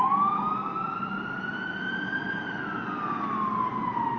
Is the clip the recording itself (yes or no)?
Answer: yes